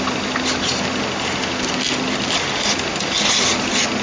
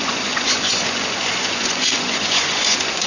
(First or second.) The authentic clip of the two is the first